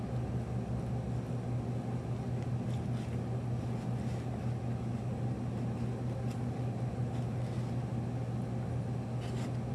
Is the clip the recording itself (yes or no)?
yes